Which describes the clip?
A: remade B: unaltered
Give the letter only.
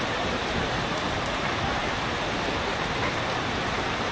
A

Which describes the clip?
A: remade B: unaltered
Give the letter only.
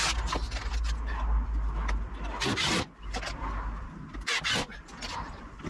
B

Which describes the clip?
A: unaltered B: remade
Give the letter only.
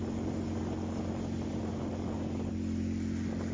A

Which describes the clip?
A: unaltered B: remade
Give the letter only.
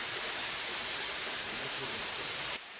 B